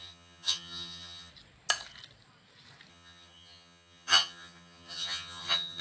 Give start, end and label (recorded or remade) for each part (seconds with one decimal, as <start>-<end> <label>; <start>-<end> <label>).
0.0-1.3 remade; 1.3-2.9 recorded; 2.9-5.8 remade